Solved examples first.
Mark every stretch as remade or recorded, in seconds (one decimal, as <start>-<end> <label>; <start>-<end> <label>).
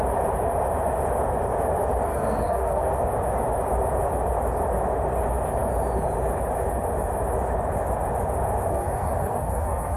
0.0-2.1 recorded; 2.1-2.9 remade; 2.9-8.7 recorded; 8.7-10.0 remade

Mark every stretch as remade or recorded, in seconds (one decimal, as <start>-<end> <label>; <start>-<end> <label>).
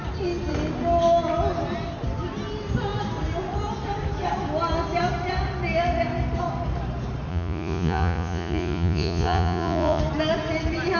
0.0-7.3 recorded; 7.3-10.0 remade; 10.0-11.0 recorded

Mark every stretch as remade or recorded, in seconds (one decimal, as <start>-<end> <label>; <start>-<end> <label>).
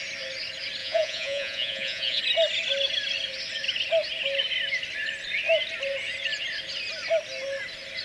0.0-0.8 recorded; 0.8-2.2 remade; 2.2-8.0 recorded